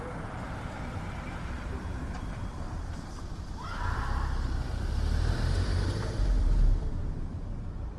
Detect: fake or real fake